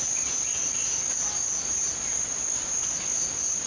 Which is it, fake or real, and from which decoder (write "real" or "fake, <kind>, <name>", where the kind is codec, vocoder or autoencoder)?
real